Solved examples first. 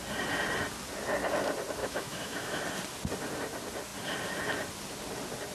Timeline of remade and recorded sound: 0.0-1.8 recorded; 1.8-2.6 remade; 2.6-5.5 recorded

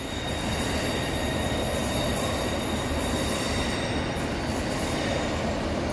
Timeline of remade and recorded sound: 0.0-5.9 recorded

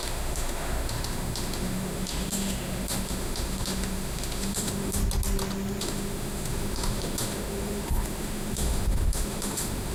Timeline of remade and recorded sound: 0.0-5.0 remade; 5.0-5.8 recorded; 5.8-9.9 remade

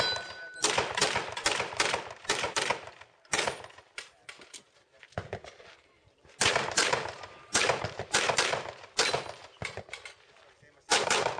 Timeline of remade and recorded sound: 0.0-11.4 recorded

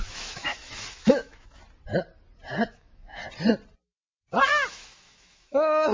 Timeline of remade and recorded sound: 0.0-1.6 remade; 1.6-2.7 recorded; 2.7-3.2 remade; 3.2-4.7 recorded; 4.7-5.9 remade

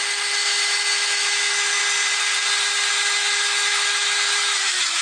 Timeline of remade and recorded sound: 0.0-1.8 remade; 1.8-2.9 recorded; 2.9-5.0 remade